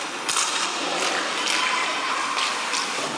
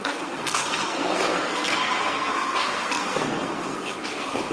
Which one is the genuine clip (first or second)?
first